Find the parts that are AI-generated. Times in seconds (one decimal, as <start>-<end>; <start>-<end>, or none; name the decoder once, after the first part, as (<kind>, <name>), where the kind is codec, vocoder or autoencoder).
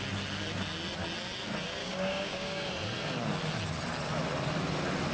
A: 1.8-2.7 (codec, DAC)